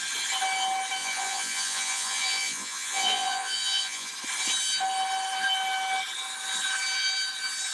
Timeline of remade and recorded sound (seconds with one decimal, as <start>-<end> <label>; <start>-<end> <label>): 0.0-1.0 recorded; 1.0-4.1 remade; 4.1-7.7 recorded